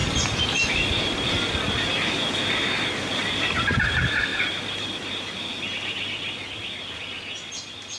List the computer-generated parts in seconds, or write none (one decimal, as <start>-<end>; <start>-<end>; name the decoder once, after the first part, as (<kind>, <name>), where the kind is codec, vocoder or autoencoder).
none